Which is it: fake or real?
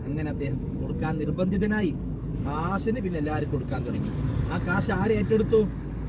fake